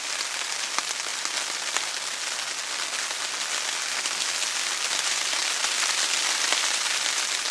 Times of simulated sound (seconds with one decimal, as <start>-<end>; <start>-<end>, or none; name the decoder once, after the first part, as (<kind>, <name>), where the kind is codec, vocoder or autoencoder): none